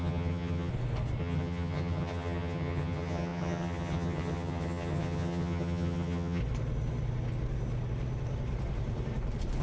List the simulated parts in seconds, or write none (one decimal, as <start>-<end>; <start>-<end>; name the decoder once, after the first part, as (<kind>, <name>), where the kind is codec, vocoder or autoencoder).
0.0-0.7 (vocoder, HiFi-GAN); 1.2-6.4